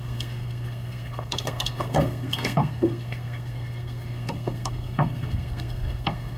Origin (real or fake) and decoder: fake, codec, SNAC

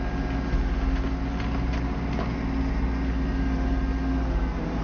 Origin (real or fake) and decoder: real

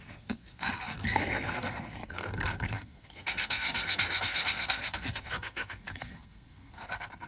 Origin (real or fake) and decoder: fake, codec, SNAC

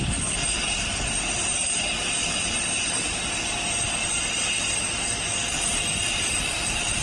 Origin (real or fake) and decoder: real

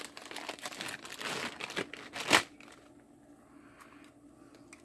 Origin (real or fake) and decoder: real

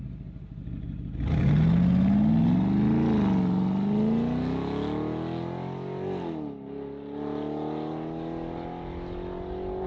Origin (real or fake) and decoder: real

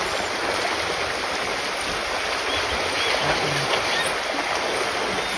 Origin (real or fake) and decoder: real